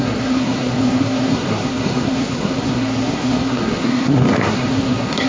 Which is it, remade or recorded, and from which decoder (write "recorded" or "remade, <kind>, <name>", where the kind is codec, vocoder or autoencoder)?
remade, codec, SNAC